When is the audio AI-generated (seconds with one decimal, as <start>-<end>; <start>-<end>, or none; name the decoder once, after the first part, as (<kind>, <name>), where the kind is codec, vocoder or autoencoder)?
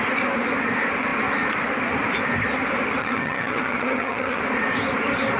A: 3.0-4.4 (vocoder, HiFi-GAN)